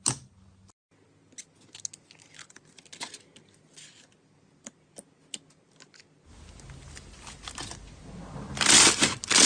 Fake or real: real